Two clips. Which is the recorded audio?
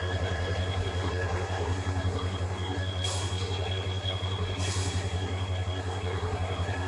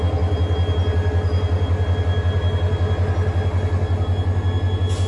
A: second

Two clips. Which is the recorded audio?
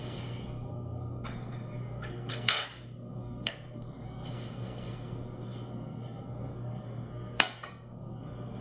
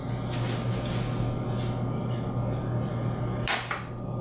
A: second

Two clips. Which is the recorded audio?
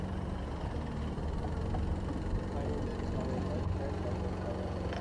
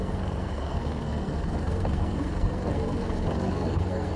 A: first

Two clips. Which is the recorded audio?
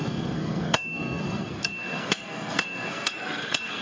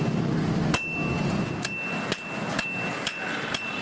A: second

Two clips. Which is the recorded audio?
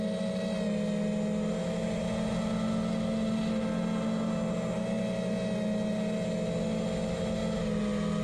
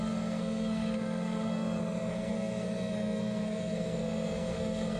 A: first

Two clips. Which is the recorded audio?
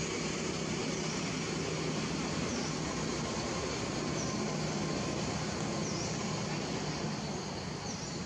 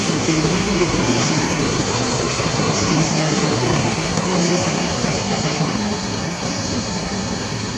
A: first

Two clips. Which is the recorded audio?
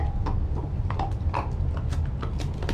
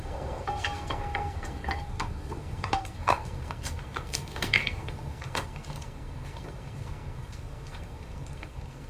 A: first